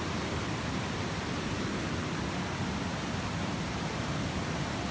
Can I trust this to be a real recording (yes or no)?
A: yes